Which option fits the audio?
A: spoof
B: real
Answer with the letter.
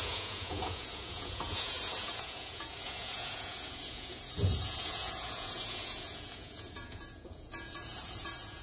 A